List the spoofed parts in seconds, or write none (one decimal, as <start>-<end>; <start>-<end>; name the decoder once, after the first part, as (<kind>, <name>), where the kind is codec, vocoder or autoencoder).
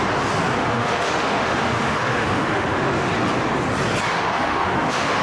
0.6-3.1 (autoencoder, DAC-VAE); 4.1-5.2